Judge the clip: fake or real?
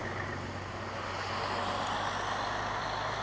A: real